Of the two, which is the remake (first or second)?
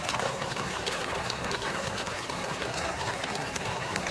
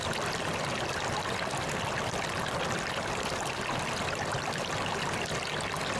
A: first